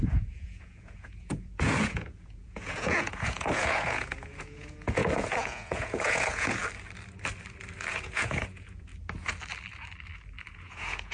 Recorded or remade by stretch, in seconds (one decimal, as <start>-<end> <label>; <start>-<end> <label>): 0.0-6.6 remade; 6.6-7.9 recorded; 7.9-8.9 remade; 8.9-10.5 recorded; 10.5-11.1 remade

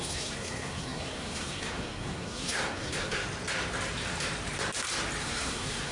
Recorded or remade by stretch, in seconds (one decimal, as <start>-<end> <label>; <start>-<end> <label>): 0.0-3.2 remade; 3.2-5.2 recorded; 5.2-5.9 remade

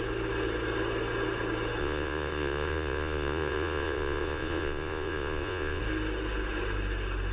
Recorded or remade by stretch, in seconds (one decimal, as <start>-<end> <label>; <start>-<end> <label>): 0.0-1.8 recorded; 1.8-5.8 remade; 5.8-7.3 recorded

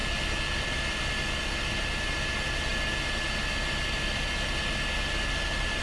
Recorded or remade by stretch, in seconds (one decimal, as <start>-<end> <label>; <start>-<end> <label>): 0.0-5.8 recorded

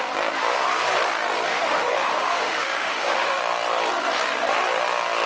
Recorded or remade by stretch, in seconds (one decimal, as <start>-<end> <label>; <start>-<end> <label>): 0.0-1.5 recorded; 1.5-3.4 remade; 3.4-5.3 recorded

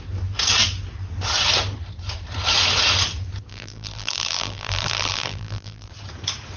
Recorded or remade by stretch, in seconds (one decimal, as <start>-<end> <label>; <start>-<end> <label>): 0.0-3.5 recorded; 3.5-5.9 remade; 5.9-6.6 recorded